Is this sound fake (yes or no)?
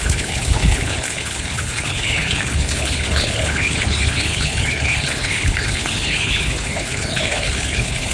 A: yes